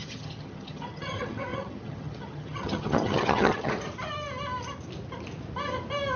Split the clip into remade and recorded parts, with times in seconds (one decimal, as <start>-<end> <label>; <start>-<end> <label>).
0.0-3.7 remade; 3.7-6.2 recorded